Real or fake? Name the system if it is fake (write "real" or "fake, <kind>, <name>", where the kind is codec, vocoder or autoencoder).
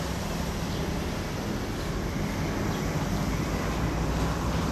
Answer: real